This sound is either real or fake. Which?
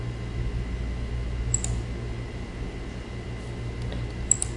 real